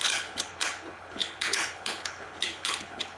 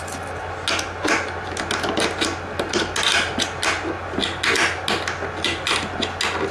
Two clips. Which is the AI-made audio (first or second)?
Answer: first